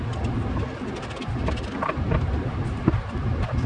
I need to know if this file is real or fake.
fake